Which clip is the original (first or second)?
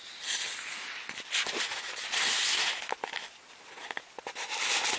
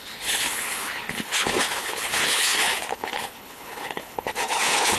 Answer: first